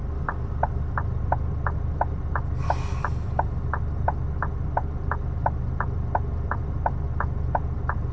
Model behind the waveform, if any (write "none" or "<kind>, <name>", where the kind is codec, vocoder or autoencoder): none